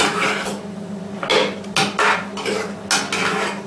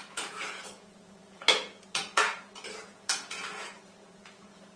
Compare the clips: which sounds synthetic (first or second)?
second